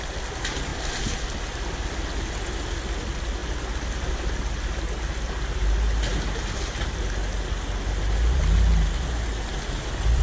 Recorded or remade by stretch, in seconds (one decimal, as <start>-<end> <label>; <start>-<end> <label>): 0.0-10.2 recorded